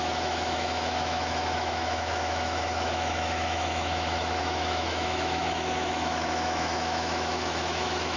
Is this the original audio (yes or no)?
no